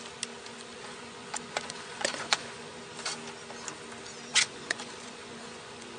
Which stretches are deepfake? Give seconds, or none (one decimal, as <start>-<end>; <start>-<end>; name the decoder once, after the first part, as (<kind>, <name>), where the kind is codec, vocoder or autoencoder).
0.5-2.8 (vocoder, Vocos); 4.3-6.0